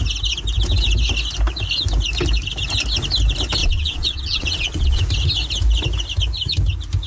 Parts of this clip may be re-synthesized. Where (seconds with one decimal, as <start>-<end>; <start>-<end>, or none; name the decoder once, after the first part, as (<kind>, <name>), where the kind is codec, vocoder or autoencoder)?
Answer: 3.6-5.0 (vocoder, WaveNeXt)